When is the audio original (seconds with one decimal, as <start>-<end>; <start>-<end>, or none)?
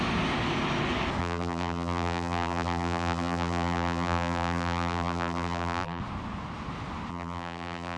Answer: 0.0-1.2; 6.0-7.1